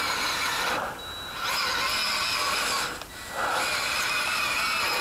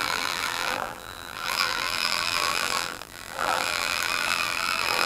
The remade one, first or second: second